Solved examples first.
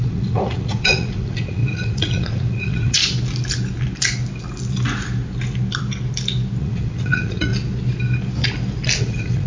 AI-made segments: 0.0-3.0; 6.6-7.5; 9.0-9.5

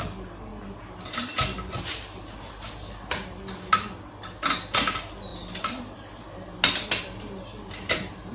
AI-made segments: none

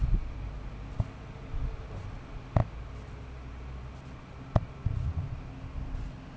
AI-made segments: none

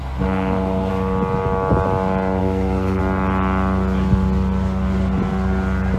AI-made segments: 0.0-0.9; 2.4-3.0

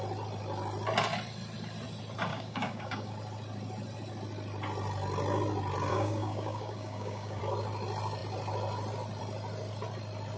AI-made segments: 2.3-3.1; 5.9-7.4

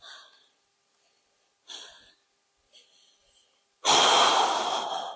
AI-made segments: 3.2-4.0

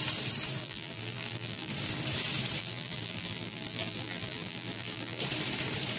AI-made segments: 0.6-1.7; 2.6-5.2